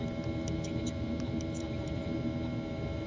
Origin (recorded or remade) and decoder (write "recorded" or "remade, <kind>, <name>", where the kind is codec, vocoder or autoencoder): remade, vocoder, BigVGAN v2